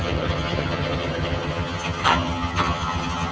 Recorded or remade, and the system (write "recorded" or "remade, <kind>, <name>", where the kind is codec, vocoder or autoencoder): remade, vocoder, HiFi-GAN